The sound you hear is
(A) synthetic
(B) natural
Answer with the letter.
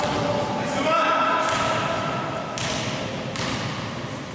B